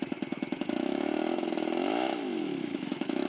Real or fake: fake